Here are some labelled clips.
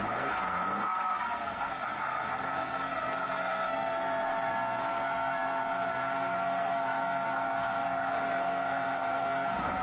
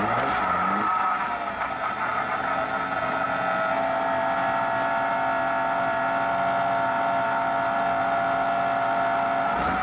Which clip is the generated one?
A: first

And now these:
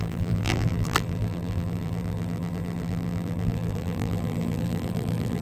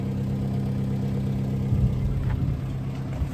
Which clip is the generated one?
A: first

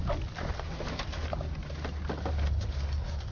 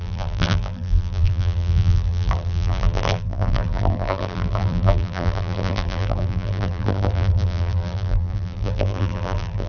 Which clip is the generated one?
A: second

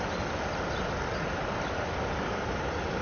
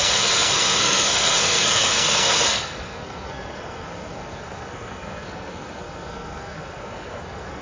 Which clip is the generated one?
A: second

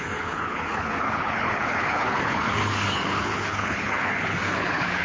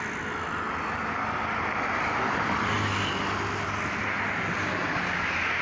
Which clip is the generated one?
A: first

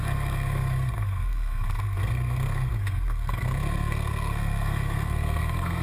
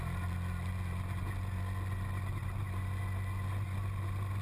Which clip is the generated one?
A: first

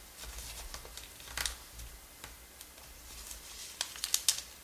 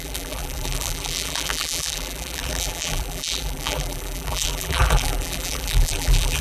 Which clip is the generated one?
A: second